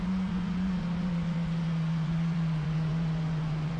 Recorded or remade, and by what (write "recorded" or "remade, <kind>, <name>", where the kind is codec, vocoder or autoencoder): remade, vocoder, Vocos